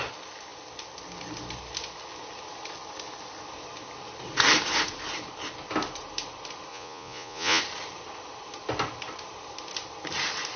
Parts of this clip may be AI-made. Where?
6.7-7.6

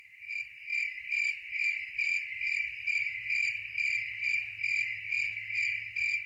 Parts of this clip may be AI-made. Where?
0.7-4.4

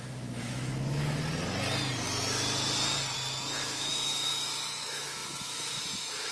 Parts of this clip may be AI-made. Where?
0.0-1.0; 3.6-6.3

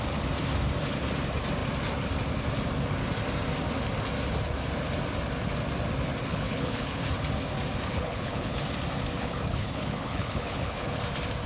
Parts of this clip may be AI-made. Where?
6.3-7.0; 7.9-8.6; 9.2-11.0

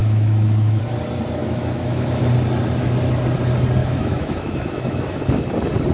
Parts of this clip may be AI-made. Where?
0.0-0.8; 1.4-2.2; 3.8-5.4

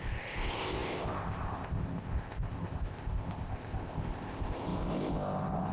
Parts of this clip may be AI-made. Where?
0.0-5.7

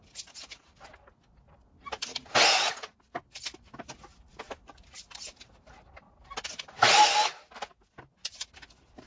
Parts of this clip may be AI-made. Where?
4.3-5.5

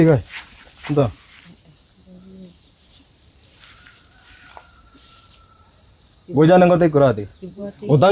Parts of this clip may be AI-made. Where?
0.0-1.0; 2.9-8.1